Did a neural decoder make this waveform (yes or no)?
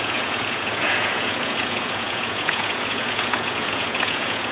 yes